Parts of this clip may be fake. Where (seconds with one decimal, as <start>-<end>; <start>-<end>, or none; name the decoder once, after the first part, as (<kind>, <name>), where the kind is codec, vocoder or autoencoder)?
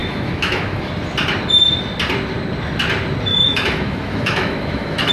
0.0-0.9 (autoencoder, DAC-VAE); 3.3-5.1